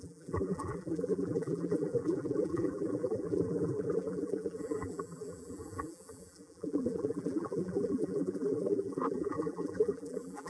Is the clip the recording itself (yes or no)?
no